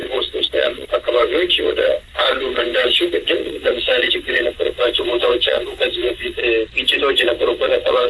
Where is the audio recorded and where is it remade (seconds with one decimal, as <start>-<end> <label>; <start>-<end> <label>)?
0.0-6.4 remade; 6.4-7.2 recorded; 7.2-8.1 remade